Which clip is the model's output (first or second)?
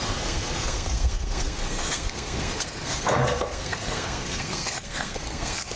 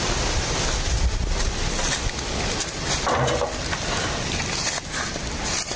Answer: first